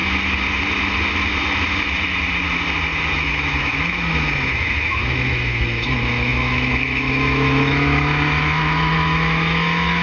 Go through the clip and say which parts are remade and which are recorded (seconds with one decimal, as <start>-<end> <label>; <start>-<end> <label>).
0.0-3.1 recorded; 3.1-10.0 remade